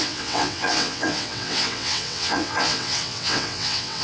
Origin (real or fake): fake